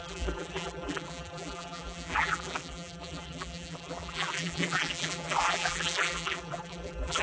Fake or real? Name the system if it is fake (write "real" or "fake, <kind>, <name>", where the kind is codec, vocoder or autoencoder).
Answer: fake, vocoder, BigVGAN v2